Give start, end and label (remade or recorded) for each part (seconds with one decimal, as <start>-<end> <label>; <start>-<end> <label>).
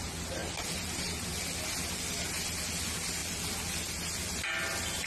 0.0-5.1 recorded